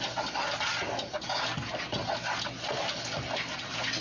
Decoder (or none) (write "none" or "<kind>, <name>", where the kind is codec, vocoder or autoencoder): none